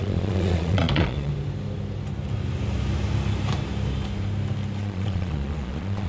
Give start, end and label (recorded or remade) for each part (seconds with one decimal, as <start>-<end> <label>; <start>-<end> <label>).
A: 0.0-1.3 remade; 1.3-4.8 recorded; 4.8-6.1 remade